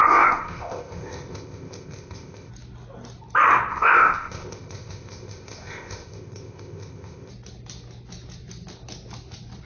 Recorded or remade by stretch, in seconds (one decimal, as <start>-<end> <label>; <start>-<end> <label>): 0.0-2.5 remade; 2.5-3.7 recorded; 3.7-7.3 remade; 7.3-9.7 recorded